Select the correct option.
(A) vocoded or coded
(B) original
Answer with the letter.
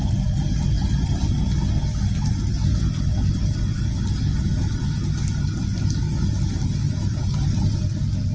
B